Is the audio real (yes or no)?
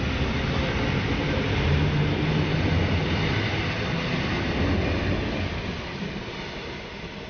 yes